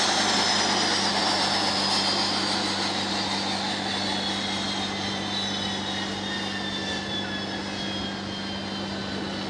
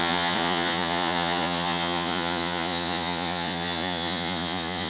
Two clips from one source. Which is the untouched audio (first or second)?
first